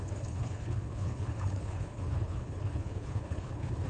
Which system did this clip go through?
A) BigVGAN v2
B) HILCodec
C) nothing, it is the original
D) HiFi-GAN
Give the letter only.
B